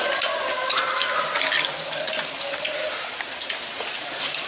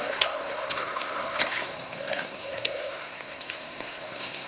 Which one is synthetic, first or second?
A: second